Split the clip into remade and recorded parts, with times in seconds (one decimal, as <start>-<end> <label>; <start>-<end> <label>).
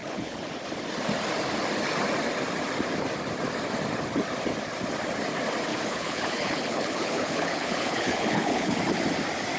0.0-0.5 remade; 0.5-5.7 recorded; 5.7-8.8 remade; 8.8-9.6 recorded